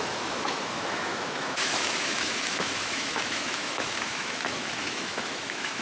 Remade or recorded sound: remade